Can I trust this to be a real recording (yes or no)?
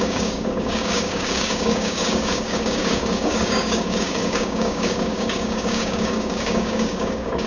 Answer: no